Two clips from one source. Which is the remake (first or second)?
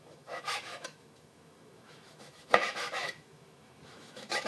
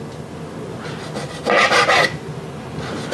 first